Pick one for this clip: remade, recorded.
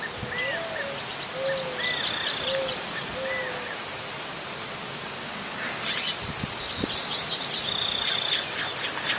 recorded